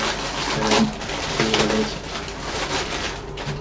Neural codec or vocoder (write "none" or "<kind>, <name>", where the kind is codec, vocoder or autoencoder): none